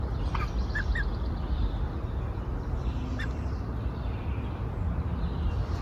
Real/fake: real